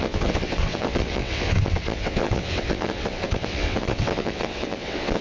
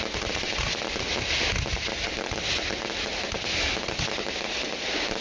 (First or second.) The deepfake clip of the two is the first